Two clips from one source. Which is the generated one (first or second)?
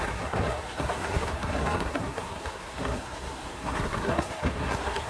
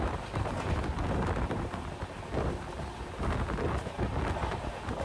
first